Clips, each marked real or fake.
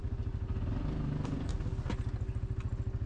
real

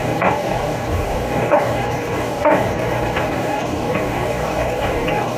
fake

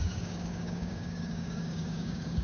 fake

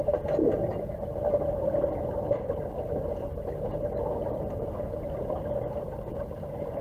real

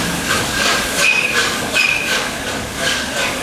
fake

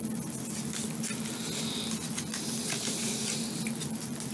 real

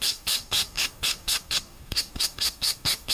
fake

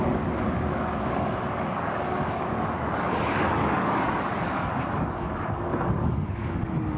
fake